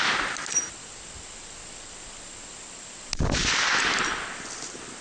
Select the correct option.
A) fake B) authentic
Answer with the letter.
B